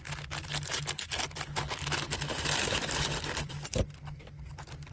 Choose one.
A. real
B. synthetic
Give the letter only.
A